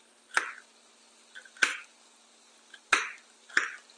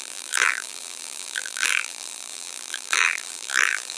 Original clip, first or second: first